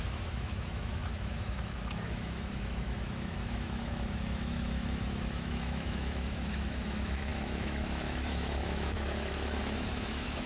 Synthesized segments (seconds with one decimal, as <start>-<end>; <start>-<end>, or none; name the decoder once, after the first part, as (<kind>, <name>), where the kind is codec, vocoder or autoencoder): 0.0-10.5 (autoencoder, DAC-VAE)